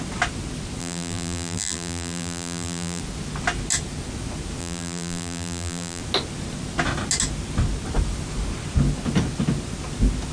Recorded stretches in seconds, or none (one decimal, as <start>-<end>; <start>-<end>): 0.0-0.8; 3.0-4.6; 6.0-10.3